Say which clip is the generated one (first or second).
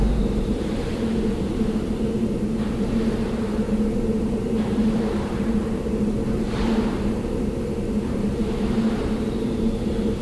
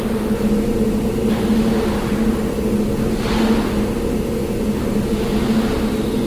first